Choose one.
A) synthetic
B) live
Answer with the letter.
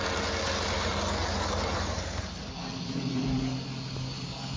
B